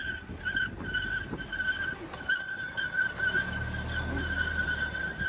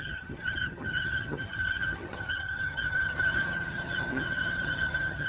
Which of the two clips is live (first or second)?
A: first